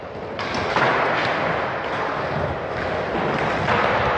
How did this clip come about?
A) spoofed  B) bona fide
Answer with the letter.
B